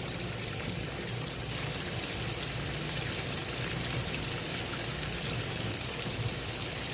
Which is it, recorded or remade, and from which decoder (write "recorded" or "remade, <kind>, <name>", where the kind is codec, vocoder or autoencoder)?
remade, vocoder, BigVGAN v2